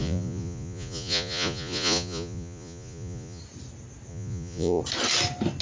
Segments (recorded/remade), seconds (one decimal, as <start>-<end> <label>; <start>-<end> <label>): 0.0-3.4 remade; 3.4-4.1 recorded; 4.1-4.8 remade; 4.8-5.6 recorded